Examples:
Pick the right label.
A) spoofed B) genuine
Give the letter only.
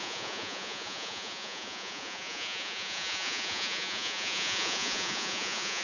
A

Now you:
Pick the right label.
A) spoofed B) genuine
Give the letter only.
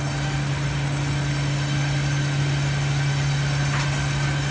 B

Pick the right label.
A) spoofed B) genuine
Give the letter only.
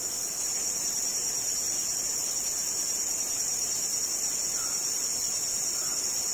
B